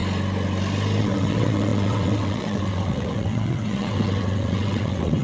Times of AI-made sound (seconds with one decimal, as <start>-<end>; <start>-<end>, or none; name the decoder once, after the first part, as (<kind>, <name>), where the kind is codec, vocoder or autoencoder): 1.0-5.2 (vocoder, WaveNeXt)